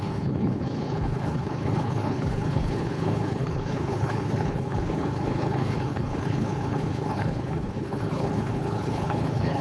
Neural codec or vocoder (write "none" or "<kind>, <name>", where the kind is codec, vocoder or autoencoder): codec, HILCodec